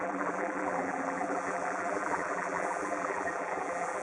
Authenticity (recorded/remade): remade